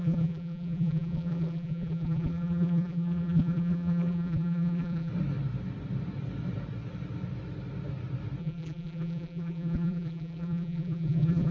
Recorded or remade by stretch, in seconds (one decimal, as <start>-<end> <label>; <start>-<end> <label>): 0.0-5.1 remade; 5.1-8.4 recorded; 8.4-11.5 remade